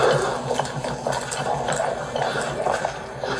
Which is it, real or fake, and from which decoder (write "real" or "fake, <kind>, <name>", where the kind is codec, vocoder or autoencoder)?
real